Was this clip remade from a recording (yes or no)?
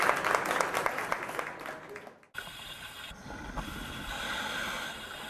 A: no